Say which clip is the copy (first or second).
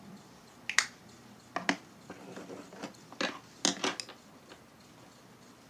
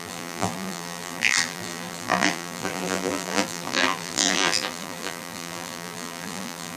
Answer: second